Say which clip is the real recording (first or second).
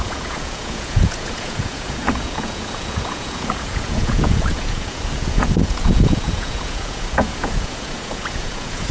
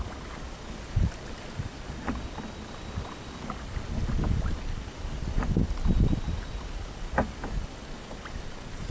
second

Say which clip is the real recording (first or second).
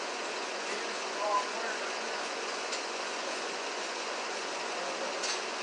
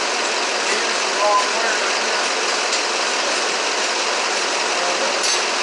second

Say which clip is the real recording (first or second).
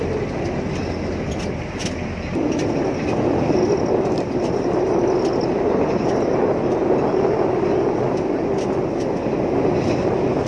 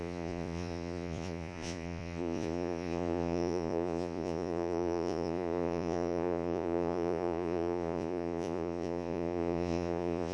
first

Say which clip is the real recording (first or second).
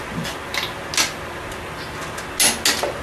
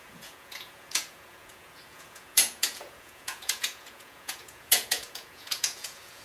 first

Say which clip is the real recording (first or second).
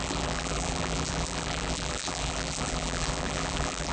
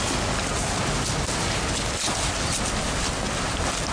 second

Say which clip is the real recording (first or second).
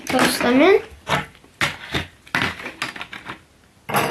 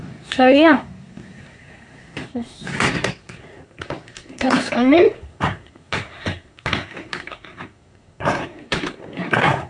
first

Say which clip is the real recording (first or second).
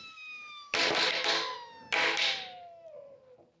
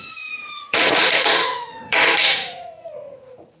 first